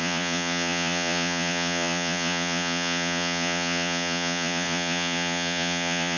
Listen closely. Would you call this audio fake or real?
fake